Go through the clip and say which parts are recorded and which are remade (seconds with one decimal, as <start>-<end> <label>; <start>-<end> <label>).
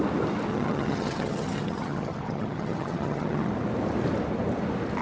0.0-0.5 recorded; 0.5-3.5 remade; 3.5-5.0 recorded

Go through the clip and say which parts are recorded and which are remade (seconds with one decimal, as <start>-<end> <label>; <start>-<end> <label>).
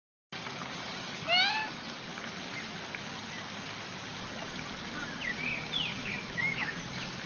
0.0-6.0 recorded; 6.0-6.8 remade; 6.8-7.3 recorded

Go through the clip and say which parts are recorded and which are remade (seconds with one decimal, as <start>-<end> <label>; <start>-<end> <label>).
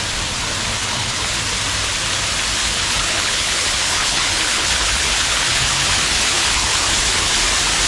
0.0-0.8 recorded; 0.8-1.4 remade; 1.4-2.6 recorded; 2.6-7.3 remade; 7.3-7.9 recorded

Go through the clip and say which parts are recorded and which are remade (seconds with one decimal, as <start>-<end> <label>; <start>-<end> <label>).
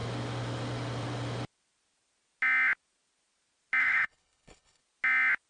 0.0-3.8 recorded; 3.8-4.8 remade; 4.8-5.5 recorded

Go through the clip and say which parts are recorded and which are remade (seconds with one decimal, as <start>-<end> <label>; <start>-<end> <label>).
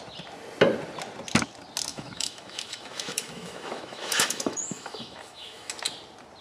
0.0-1.9 recorded; 1.9-5.7 remade; 5.7-6.4 recorded